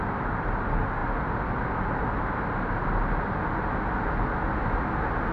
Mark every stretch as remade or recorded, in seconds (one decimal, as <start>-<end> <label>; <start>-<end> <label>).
0.0-5.3 recorded

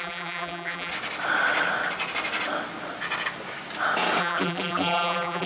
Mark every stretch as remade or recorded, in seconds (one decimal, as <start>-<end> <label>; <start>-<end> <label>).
0.0-0.9 remade; 0.9-4.2 recorded; 4.2-5.5 remade